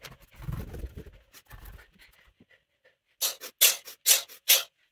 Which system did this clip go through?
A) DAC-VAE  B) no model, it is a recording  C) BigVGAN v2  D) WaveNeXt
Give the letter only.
B